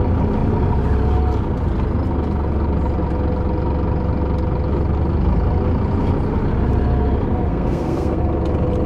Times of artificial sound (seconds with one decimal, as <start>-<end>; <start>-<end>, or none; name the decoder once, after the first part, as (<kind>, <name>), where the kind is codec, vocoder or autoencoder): 7.5-8.2 (codec, SNAC)